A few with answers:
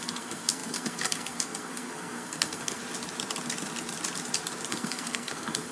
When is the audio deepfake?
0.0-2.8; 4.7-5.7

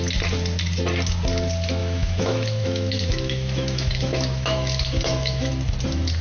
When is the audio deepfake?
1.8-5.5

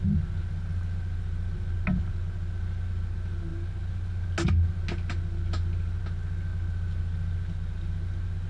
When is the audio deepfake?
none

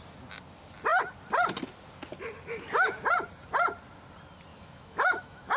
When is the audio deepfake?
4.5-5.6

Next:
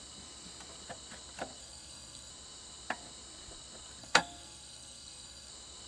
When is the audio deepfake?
1.6-2.3; 4.0-5.5

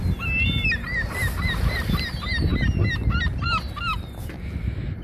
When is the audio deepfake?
none